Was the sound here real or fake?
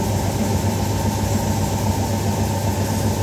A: real